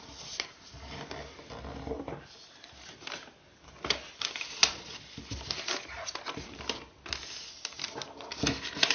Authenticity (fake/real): real